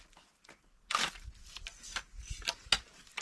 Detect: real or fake real